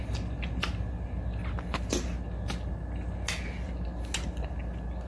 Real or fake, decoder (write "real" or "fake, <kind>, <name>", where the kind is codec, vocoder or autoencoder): real